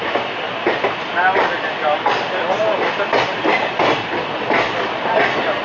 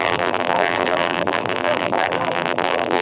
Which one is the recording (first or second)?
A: first